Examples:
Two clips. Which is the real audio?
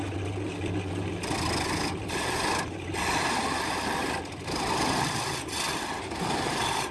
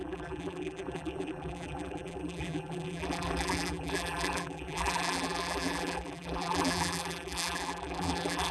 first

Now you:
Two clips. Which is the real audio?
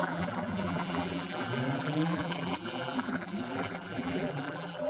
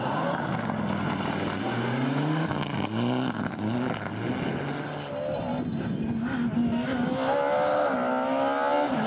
second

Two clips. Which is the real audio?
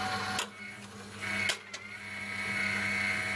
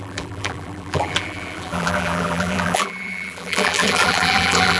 first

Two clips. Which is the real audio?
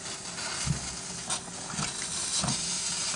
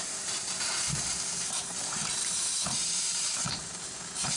first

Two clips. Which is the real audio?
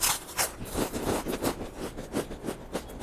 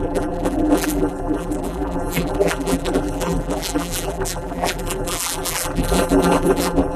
first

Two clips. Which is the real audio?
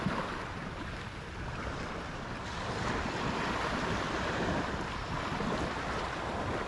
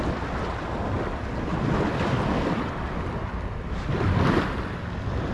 second